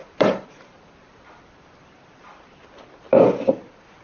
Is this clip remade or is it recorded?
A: remade